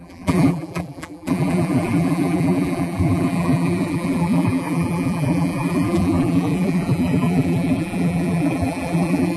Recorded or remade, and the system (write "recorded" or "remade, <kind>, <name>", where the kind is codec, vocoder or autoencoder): remade, vocoder, BigVGAN v2